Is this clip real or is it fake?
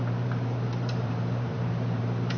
fake